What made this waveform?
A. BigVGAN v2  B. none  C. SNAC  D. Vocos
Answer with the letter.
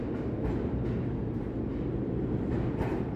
B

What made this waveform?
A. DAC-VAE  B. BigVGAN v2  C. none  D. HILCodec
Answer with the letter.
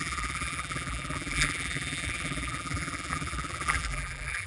B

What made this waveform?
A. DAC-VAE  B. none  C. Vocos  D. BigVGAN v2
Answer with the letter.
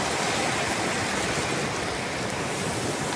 B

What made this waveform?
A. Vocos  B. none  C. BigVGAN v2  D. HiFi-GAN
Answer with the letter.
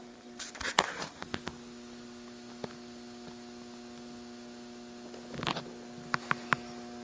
B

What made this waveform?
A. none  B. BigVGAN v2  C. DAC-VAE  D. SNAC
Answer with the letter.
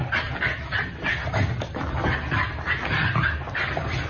A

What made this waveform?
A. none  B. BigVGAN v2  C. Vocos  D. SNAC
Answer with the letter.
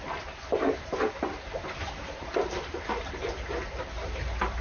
B